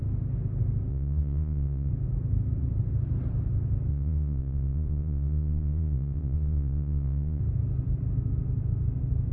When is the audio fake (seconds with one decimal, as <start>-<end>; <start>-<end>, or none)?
0.9-1.9; 3.9-7.4